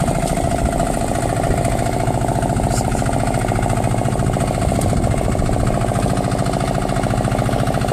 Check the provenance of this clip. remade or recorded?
recorded